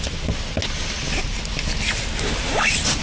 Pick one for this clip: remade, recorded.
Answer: recorded